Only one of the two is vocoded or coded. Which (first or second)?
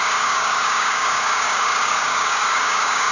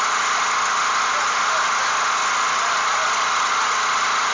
first